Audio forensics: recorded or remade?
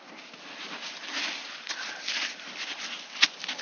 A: recorded